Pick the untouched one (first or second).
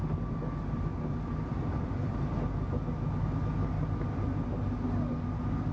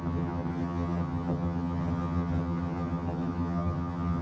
first